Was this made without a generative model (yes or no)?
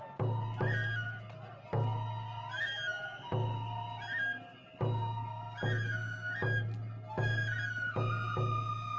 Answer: yes